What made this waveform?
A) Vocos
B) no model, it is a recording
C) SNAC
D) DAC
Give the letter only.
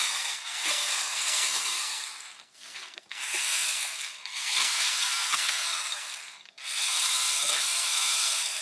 C